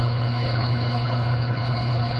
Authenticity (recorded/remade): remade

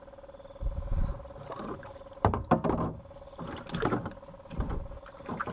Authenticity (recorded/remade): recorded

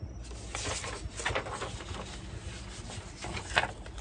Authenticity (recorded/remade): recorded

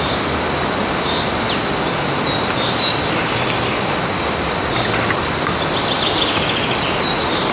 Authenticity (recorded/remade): recorded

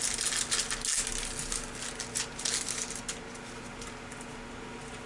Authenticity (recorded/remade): recorded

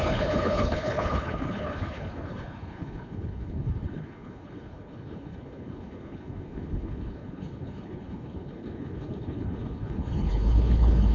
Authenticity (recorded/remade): remade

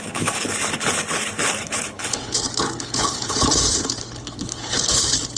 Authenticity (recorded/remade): remade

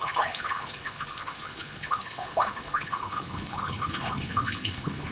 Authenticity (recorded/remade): remade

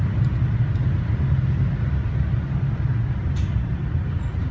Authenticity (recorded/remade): recorded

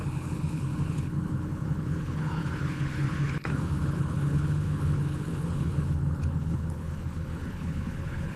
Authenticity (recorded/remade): remade